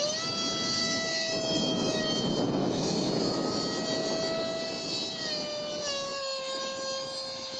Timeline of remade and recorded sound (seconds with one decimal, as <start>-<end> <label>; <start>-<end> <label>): 0.0-0.8 recorded; 0.8-2.0 remade; 2.0-2.6 recorded; 2.6-3.5 remade; 3.5-6.1 recorded; 6.1-7.6 remade